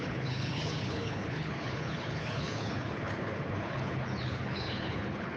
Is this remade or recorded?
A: remade